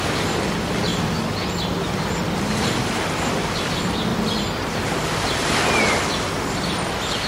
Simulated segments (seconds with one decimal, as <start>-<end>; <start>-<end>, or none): 0.0-4.1; 5.8-7.3